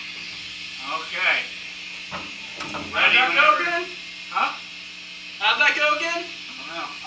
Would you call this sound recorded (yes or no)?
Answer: yes